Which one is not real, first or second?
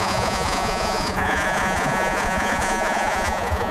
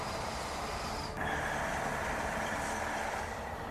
first